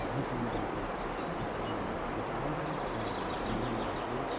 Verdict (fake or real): real